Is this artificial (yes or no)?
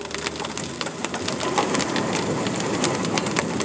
no